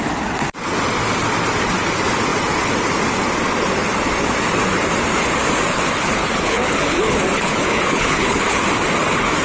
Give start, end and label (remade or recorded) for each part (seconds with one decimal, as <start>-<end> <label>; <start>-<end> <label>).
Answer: 0.0-5.7 recorded; 5.7-8.6 remade; 8.6-9.4 recorded